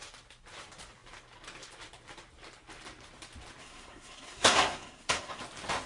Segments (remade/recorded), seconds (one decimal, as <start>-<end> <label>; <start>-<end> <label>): 0.0-3.6 recorded; 3.6-5.4 remade; 5.4-5.9 recorded

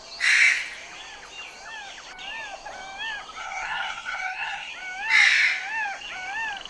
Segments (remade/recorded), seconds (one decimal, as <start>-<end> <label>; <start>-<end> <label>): 0.0-3.4 recorded; 3.4-4.7 remade; 4.7-6.7 recorded

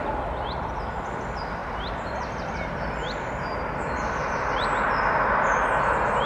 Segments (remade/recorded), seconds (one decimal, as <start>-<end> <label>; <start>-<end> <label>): 0.0-1.6 recorded; 1.6-4.9 remade; 4.9-6.3 recorded

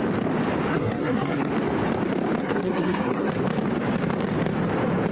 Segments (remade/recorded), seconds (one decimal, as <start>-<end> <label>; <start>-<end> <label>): 0.0-0.7 recorded; 0.7-1.5 remade; 1.5-2.4 recorded; 2.4-3.3 remade; 3.3-5.1 recorded

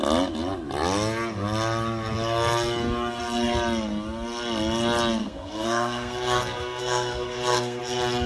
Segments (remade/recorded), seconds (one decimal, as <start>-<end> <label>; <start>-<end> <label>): 0.0-5.2 recorded; 5.2-7.8 remade; 7.8-8.3 recorded

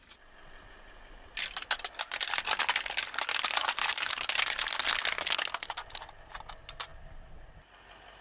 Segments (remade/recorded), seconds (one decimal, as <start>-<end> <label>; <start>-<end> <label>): 0.0-8.2 recorded

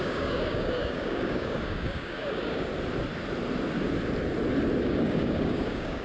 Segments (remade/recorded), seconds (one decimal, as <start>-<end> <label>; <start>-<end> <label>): 0.0-2.7 remade; 2.7-4.8 recorded; 4.8-6.0 remade

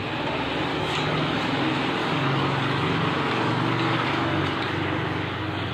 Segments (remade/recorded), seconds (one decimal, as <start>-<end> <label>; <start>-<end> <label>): 0.0-0.7 recorded; 0.7-1.5 remade; 1.5-2.0 recorded; 2.0-5.7 remade